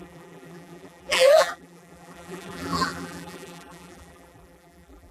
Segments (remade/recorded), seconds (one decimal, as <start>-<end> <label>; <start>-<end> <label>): 0.0-5.1 remade